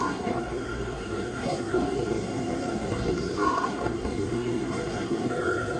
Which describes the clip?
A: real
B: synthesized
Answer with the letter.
B